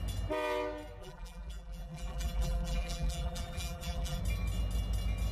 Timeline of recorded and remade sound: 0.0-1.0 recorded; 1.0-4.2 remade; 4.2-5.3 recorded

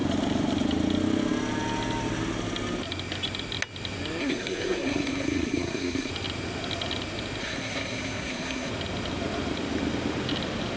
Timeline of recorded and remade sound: 0.0-4.2 recorded; 4.2-6.1 remade; 6.1-7.4 recorded; 7.4-8.7 remade; 8.7-10.8 recorded